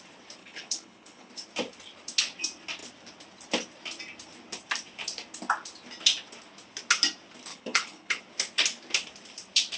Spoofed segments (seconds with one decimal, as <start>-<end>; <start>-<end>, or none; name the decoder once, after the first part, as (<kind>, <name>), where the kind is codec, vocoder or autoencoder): 0.4-1.3 (codec, HILCodec); 7.5-8.2